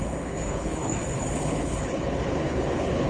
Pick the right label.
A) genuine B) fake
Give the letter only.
B